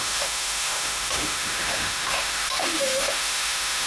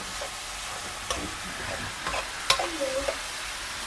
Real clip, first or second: second